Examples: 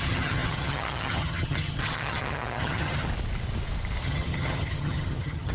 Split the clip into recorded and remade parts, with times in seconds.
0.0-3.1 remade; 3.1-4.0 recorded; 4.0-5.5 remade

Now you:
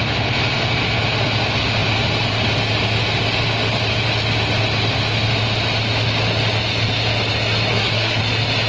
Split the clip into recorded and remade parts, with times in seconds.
0.0-7.7 recorded; 7.7-8.2 remade; 8.2-8.7 recorded

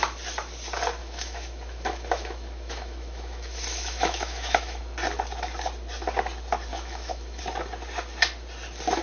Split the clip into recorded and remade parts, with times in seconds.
0.0-1.0 recorded; 1.0-4.8 remade; 4.8-6.7 recorded; 6.7-7.4 remade; 7.4-9.0 recorded

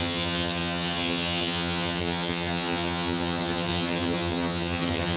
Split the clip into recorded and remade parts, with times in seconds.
0.0-5.2 remade

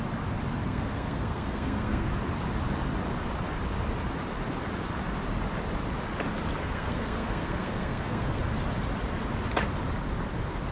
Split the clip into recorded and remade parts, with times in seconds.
0.0-0.6 recorded; 0.6-2.1 remade; 2.1-6.6 recorded; 6.6-8.4 remade; 8.4-10.7 recorded

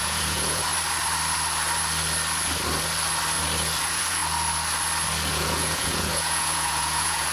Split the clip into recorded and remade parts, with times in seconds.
0.0-0.7 remade; 0.7-3.8 recorded; 3.8-4.2 remade; 4.2-5.3 recorded; 5.3-7.3 remade